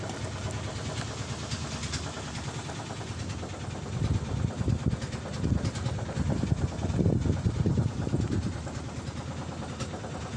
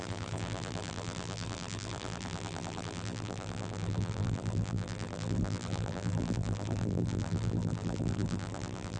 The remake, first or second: second